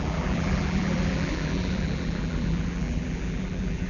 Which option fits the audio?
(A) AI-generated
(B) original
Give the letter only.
A